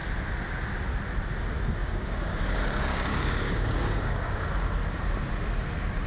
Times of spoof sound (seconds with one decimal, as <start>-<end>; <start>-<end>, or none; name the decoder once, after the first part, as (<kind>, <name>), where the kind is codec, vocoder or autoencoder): 1.8-4.5 (codec, DAC)